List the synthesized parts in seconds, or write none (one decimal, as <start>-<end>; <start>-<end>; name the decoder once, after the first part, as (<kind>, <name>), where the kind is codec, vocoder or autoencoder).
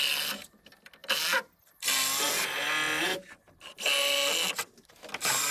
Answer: none